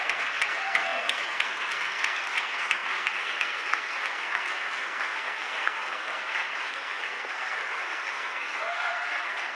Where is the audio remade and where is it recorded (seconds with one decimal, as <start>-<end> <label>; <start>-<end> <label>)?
0.0-9.6 remade